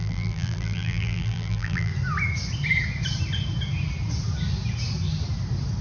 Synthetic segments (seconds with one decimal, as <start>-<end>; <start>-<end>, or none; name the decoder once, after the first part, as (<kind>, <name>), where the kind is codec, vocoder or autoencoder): 0.0-1.9 (vocoder, BigVGAN v2)